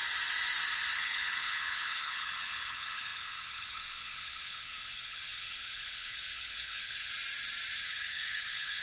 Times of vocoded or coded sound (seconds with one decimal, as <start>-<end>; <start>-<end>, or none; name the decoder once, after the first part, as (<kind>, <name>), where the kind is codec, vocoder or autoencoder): 0.9-7.1 (codec, HILCodec); 7.8-8.8